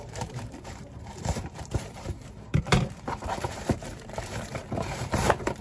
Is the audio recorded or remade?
remade